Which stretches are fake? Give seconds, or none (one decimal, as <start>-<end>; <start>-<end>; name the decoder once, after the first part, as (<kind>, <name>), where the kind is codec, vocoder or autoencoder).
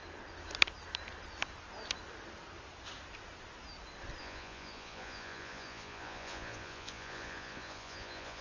4.2-8.4 (vocoder, Vocos)